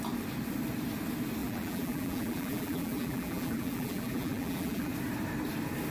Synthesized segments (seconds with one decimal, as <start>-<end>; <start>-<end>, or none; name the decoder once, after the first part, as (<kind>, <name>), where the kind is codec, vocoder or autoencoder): 1.4-4.9 (vocoder, BigVGAN v2)